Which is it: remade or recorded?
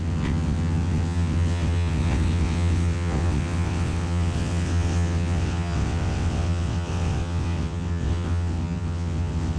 remade